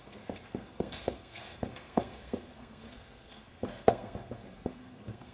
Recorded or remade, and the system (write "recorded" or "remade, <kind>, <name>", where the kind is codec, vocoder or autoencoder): remade, codec, SNAC